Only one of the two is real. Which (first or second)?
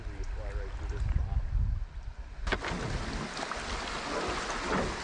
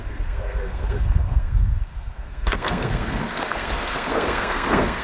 first